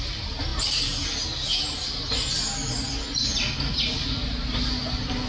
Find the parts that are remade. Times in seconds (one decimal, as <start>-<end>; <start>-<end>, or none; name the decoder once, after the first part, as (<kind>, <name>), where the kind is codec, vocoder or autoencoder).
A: none